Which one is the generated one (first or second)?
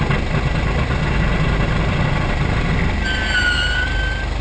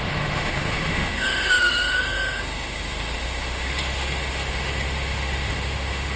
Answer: second